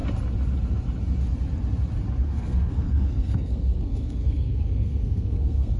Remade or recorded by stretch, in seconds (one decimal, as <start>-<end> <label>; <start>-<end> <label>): 0.0-2.2 recorded; 2.2-5.8 remade